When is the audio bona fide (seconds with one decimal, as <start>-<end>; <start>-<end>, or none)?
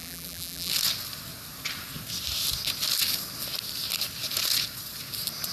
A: 0.7-5.5